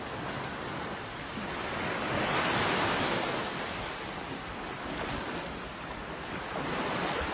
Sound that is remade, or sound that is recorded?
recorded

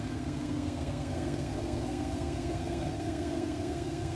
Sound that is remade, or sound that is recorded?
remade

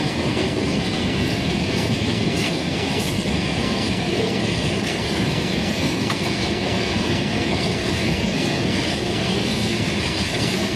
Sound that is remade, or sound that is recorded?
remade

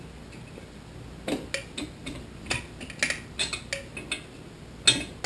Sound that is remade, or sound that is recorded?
recorded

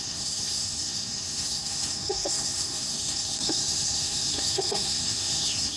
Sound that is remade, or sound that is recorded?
remade